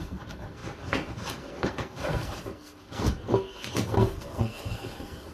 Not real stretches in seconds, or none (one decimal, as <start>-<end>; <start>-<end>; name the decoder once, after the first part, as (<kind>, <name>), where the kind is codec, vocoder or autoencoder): 0.0-5.3 (codec, SNAC)